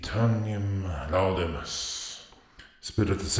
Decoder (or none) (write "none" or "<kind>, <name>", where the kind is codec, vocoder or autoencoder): none